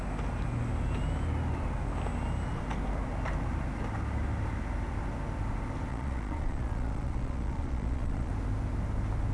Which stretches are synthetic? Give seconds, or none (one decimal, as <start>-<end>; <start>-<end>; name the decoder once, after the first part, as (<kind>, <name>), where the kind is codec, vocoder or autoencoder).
5.9-8.3 (vocoder, Vocos)